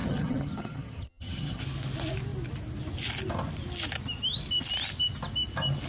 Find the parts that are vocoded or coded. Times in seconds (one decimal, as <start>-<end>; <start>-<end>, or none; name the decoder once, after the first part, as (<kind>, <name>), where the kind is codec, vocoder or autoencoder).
0.0-1.6 (vocoder, HiFi-GAN)